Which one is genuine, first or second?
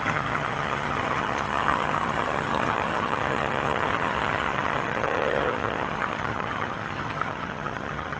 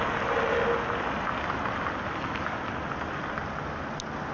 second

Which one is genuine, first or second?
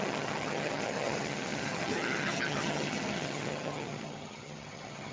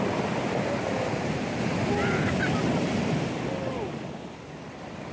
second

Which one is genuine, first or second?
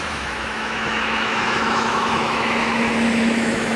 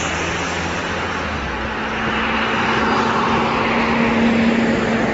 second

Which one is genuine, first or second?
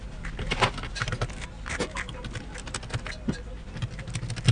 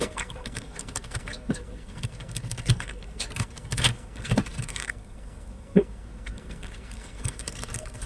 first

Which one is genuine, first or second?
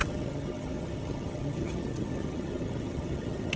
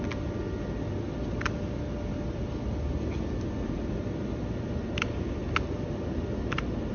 second